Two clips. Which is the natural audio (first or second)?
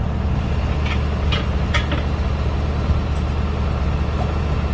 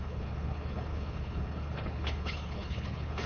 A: first